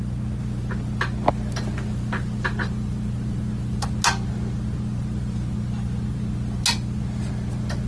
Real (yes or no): yes